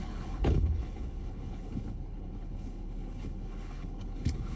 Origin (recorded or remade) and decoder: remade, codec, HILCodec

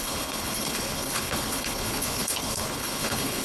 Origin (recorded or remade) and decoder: remade, codec, HILCodec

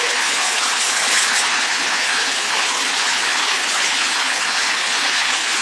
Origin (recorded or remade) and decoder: remade, codec, HILCodec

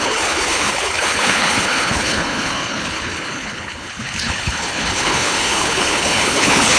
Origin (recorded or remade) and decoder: remade, codec, HILCodec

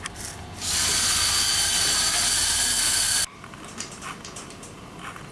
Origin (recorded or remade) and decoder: recorded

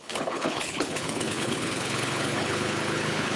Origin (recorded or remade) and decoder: remade, codec, HILCodec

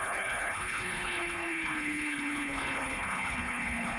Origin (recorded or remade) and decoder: remade, codec, HILCodec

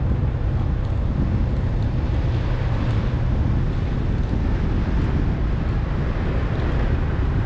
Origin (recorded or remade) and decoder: recorded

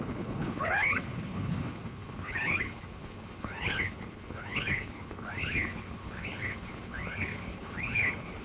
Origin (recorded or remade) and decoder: remade, codec, HILCodec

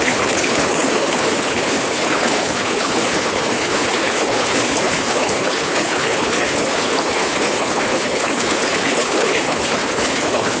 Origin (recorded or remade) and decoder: remade, codec, HILCodec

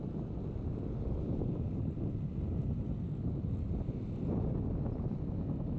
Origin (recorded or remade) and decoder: recorded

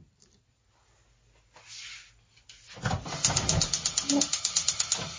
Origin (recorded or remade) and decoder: recorded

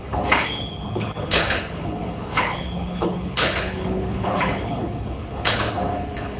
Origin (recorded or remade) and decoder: remade, codec, HILCodec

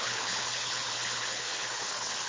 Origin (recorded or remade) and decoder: remade, codec, HILCodec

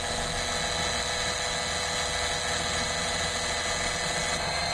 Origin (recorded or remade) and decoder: recorded